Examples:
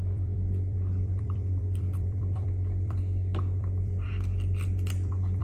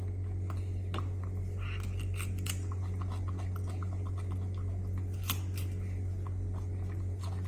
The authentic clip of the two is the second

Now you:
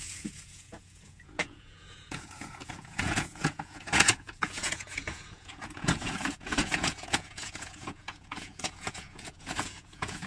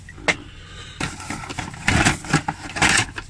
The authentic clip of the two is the second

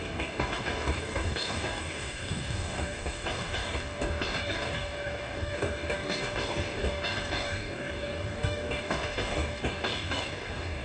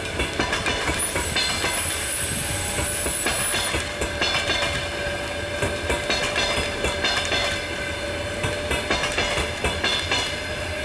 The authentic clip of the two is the second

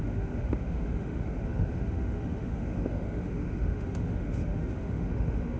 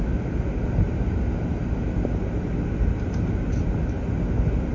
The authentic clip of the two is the second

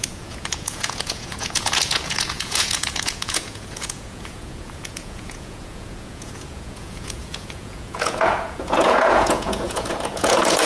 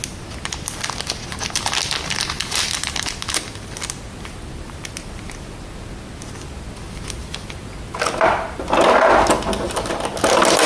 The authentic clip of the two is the second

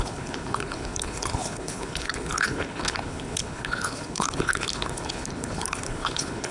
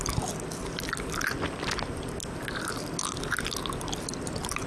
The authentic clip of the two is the second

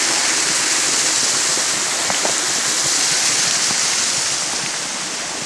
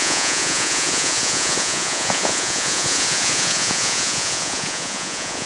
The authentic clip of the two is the first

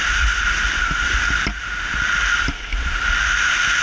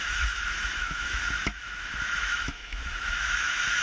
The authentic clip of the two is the first